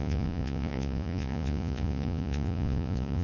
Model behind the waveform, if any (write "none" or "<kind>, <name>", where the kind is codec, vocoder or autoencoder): vocoder, Vocos